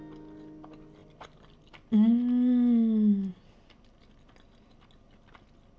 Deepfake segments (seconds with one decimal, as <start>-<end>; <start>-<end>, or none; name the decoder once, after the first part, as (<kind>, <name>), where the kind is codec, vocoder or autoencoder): none